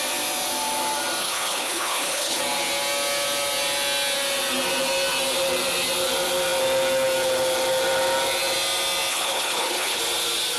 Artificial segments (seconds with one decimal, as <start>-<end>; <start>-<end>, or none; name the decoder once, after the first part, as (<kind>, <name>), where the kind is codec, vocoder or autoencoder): 1.2-2.4 (codec, HILCodec); 9.1-10.0